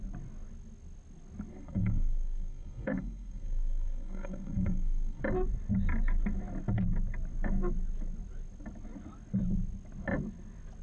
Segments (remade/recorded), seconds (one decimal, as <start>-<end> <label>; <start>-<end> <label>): 0.0-1.5 recorded; 1.5-5.2 remade; 5.2-10.8 recorded